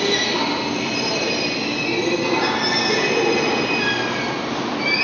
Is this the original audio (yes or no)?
yes